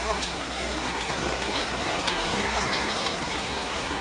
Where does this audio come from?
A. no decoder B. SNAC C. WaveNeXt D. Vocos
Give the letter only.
B